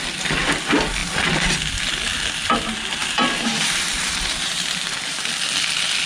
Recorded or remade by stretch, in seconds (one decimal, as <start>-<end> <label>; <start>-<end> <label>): 0.0-3.0 recorded; 3.0-5.2 remade; 5.2-6.1 recorded